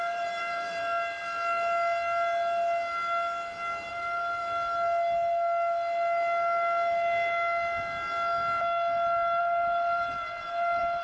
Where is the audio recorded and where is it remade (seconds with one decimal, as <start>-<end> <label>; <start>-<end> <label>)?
0.0-0.8 remade; 0.8-3.9 recorded; 3.9-4.4 remade; 4.4-9.4 recorded; 9.4-11.0 remade